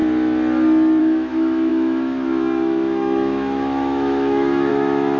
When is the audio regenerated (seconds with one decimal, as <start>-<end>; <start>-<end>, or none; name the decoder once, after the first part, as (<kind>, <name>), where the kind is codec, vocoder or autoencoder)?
1.0-5.2 (autoencoder, DAC-VAE)